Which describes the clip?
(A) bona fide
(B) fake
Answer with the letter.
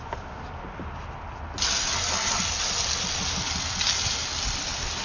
A